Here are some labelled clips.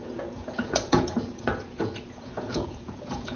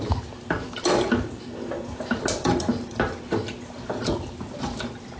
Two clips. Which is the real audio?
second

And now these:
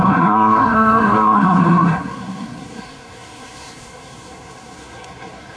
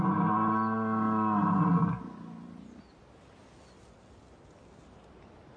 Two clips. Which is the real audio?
second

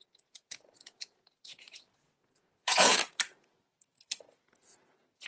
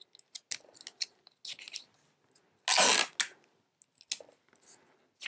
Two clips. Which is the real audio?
second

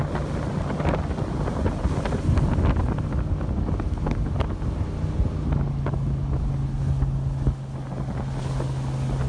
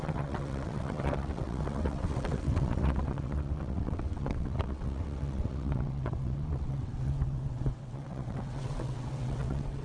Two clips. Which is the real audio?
first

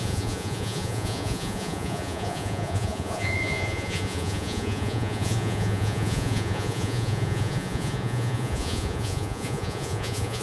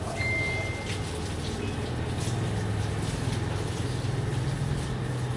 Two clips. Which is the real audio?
second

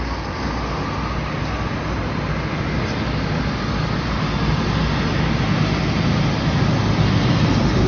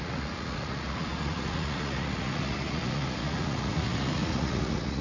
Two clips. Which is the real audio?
first